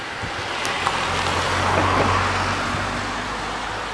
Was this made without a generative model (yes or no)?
yes